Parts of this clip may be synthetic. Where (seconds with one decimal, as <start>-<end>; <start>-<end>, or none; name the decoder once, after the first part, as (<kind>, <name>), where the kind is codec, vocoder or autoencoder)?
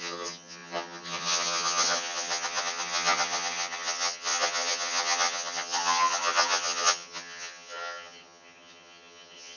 0.0-9.6 (vocoder, HiFi-GAN)